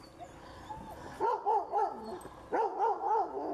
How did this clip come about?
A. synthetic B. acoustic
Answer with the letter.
B